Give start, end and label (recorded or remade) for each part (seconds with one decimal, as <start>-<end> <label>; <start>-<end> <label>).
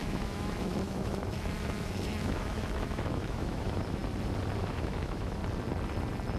0.0-4.0 remade; 4.0-4.6 recorded; 4.6-5.4 remade; 5.4-6.4 recorded